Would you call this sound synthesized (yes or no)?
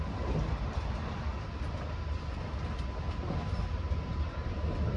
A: no